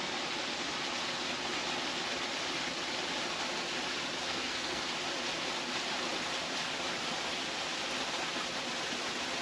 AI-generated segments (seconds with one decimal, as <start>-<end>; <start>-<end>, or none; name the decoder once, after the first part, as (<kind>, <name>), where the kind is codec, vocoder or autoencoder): 4.2-4.8 (codec, SNAC)